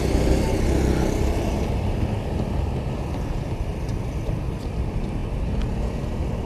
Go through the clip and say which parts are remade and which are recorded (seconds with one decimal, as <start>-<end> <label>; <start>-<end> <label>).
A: 0.0-6.5 recorded